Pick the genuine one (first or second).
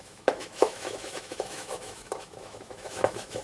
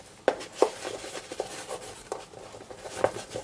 second